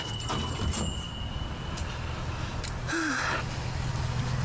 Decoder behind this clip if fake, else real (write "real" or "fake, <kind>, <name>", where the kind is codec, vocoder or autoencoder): real